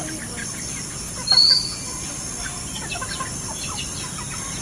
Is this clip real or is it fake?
real